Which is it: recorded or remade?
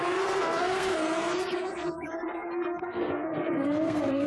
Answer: remade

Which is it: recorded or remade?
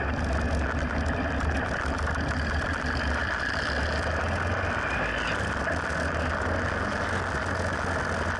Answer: recorded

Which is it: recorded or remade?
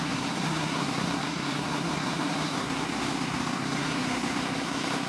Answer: remade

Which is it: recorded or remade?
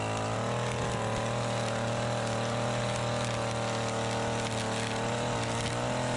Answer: recorded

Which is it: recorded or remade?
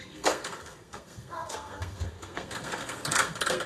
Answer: remade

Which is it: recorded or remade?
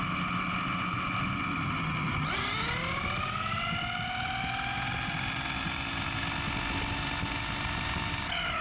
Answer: recorded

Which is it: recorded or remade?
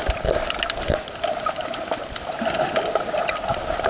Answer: recorded